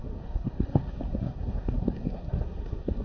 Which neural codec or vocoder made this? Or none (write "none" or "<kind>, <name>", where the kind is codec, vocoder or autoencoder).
codec, SNAC